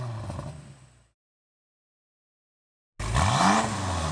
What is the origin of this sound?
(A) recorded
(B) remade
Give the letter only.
A